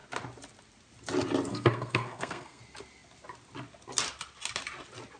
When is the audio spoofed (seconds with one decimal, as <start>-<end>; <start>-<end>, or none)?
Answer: 1.5-2.6